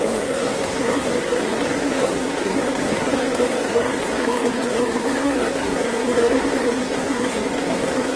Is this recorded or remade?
remade